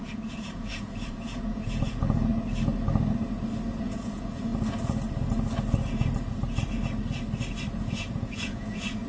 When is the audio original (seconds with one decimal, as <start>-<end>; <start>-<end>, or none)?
2.3-3.8; 4.5-7.7